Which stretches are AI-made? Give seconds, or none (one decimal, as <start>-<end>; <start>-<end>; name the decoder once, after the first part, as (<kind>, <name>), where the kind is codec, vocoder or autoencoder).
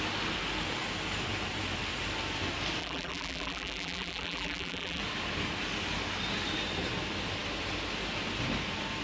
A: 2.8-5.0 (vocoder, BigVGAN v2)